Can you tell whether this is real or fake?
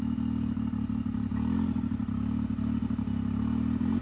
real